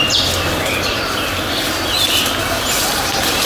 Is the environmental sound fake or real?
real